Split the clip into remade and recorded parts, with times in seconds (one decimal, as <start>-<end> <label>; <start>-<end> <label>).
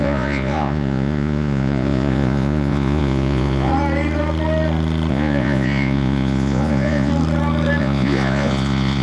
0.0-3.7 remade; 3.7-5.1 recorded; 5.1-7.1 remade; 7.1-7.8 recorded; 7.8-9.0 remade